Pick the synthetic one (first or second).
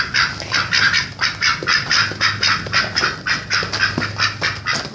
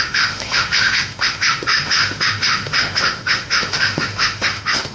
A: second